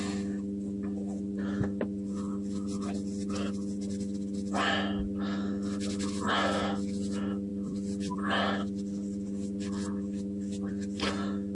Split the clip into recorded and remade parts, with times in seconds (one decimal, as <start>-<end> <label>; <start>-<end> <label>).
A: 0.0-7.5 recorded; 7.5-10.7 remade; 10.7-11.5 recorded